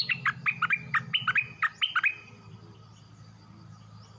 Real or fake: real